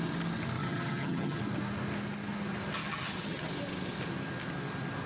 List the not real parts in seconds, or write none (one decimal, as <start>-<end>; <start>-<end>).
0.6-1.4; 2.8-3.5